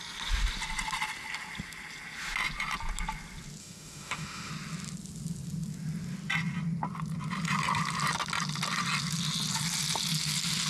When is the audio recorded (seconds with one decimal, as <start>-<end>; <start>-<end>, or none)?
0.0-3.6; 4.5-10.7